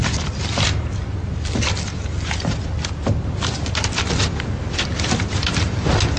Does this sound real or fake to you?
real